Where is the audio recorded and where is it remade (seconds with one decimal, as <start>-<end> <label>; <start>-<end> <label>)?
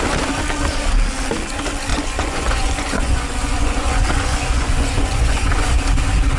0.0-1.9 recorded; 1.9-5.7 remade; 5.7-6.4 recorded